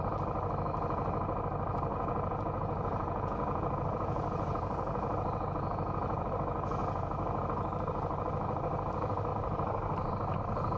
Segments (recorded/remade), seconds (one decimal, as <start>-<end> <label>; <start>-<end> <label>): 0.0-1.9 recorded; 1.9-6.3 remade; 6.3-6.8 recorded; 6.8-7.4 remade; 7.4-10.8 recorded